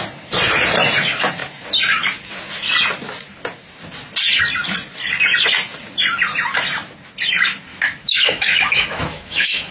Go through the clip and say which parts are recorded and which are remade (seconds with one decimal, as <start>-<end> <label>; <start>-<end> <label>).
0.0-7.7 recorded; 7.7-9.7 remade

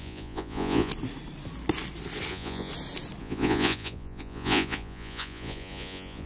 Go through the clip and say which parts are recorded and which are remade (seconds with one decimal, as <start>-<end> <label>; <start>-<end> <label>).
0.0-0.9 remade; 0.9-2.3 recorded; 2.3-2.7 remade; 2.7-3.2 recorded; 3.2-6.3 remade

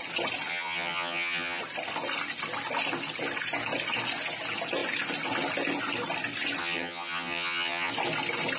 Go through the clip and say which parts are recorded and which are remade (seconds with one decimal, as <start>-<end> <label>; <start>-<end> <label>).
0.0-0.5 recorded; 0.5-1.6 remade; 1.6-6.6 recorded; 6.6-7.9 remade; 7.9-8.6 recorded

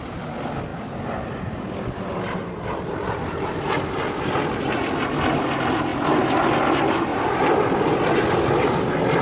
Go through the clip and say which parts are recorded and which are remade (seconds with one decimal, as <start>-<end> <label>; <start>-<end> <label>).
0.0-0.7 recorded; 0.7-1.9 remade; 1.9-7.1 recorded; 7.1-7.9 remade; 7.9-9.2 recorded

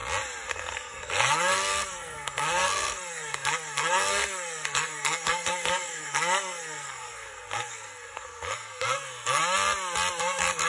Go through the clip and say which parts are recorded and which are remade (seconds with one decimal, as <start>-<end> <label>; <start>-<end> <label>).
0.0-0.5 recorded; 0.5-9.4 remade; 9.4-10.2 recorded; 10.2-10.7 remade

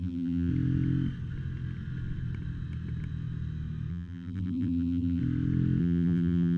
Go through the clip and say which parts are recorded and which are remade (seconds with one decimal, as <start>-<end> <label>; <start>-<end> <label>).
0.0-0.5 remade; 0.5-3.9 recorded; 3.9-5.2 remade; 5.2-5.8 recorded; 5.8-6.6 remade